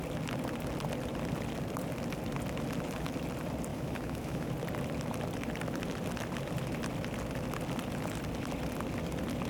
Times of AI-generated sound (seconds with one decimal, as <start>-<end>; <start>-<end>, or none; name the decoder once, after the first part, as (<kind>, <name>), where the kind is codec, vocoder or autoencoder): 3.7-4.5 (autoencoder, DAC-VAE)